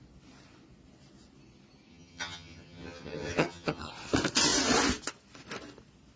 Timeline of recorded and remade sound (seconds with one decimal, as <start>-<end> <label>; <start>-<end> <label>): 0.0-1.9 recorded; 1.9-3.9 remade; 3.9-6.2 recorded